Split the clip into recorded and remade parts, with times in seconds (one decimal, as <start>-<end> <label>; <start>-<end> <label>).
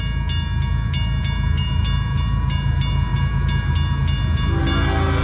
0.0-5.2 recorded